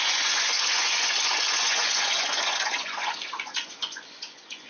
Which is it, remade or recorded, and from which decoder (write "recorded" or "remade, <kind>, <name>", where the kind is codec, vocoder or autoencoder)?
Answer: remade, vocoder, Vocos